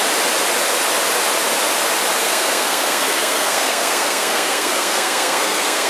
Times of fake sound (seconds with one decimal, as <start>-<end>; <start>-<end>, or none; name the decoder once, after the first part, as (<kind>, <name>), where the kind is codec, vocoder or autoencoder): 2.2-5.9 (codec, SNAC)